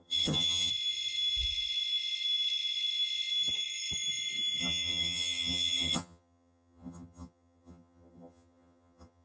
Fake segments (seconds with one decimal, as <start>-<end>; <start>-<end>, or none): 0.0-0.7; 4.6-9.2